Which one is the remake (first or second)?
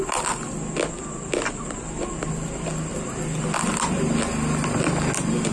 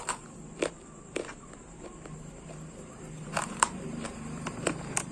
second